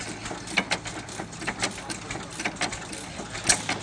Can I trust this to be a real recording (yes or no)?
yes